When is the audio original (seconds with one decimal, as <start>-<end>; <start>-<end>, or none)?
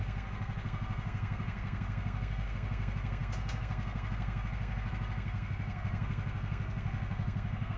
none